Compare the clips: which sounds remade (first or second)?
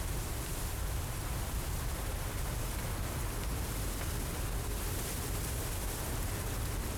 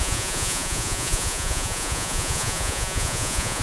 second